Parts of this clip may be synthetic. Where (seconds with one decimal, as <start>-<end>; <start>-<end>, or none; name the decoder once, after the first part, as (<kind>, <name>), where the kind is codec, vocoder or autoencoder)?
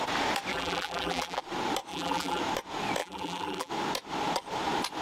0.5-1.4 (vocoder, BigVGAN v2); 1.9-2.4; 3.0-3.7